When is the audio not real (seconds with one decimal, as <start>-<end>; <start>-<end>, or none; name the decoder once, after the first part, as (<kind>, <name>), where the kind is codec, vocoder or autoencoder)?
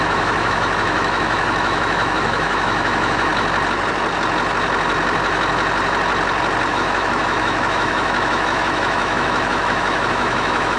0.0-3.3 (autoencoder, DAC-VAE); 6.7-10.8